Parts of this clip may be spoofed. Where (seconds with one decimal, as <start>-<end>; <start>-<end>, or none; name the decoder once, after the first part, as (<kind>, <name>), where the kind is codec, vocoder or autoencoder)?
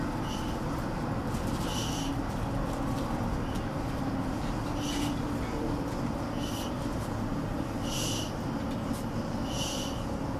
none